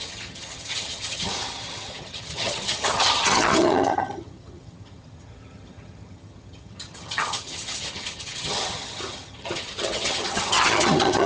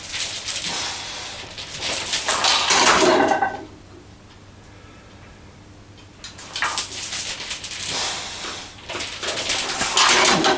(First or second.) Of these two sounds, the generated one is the first